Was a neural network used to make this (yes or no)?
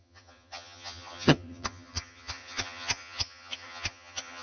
yes